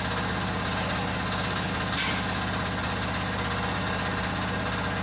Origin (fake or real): real